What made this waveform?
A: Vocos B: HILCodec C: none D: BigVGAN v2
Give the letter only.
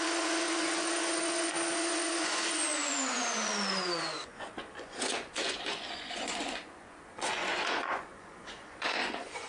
A